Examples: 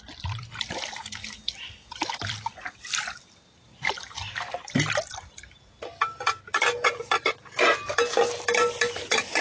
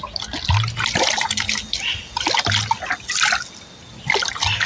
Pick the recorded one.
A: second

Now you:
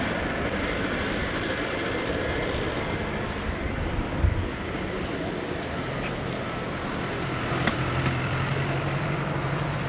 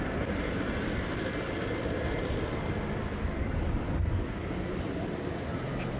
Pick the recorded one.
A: second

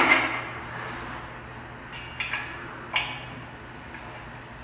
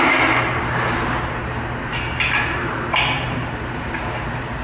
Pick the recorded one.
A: first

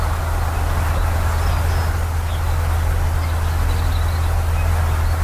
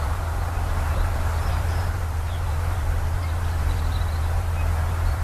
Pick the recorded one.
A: first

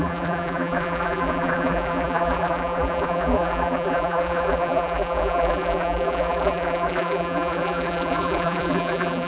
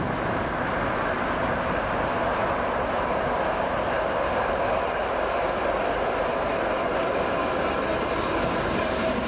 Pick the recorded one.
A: second